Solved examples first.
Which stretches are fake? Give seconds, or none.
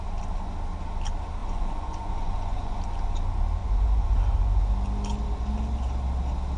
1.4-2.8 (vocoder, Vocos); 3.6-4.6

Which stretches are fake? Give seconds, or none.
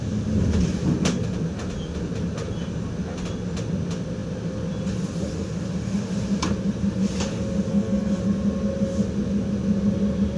7.7-8.2 (codec, SNAC)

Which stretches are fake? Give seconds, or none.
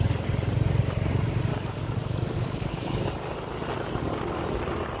1.5-3.0 (codec, DAC)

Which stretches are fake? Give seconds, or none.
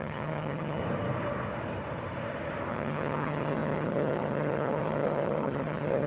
0.0-0.8 (vocoder, HiFi-GAN); 2.7-6.1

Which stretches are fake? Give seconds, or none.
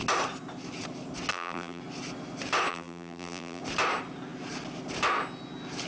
1.3-1.8 (vocoder, BigVGAN v2); 2.7-3.6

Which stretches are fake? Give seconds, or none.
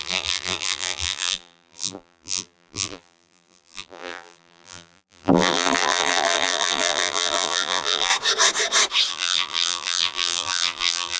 0.0-8.1 (vocoder, BigVGAN v2); 9.1-11.2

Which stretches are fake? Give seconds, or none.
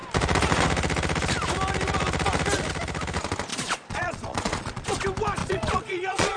3.5-4.9 (vocoder, Vocos); 5.4-6.4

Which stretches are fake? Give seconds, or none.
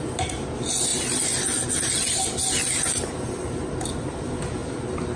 none